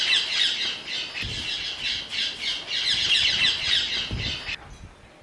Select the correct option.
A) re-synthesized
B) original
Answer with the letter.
B